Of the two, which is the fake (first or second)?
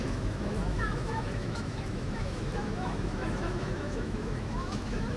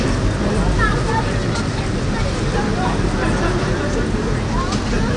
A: first